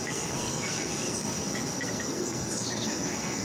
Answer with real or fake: fake